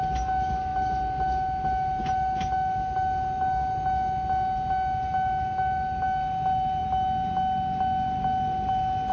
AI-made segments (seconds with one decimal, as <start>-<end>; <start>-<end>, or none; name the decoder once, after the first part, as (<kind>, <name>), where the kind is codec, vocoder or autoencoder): none